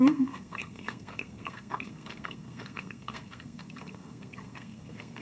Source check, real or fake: fake